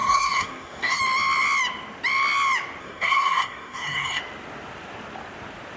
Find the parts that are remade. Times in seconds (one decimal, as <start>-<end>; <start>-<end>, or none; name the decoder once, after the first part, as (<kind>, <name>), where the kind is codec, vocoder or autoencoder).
0.0-1.0 (codec, SNAC); 2.8-4.2